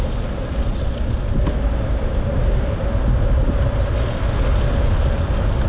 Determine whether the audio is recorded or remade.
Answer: recorded